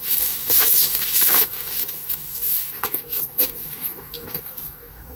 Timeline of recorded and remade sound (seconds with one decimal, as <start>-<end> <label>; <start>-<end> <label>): 0.0-5.2 remade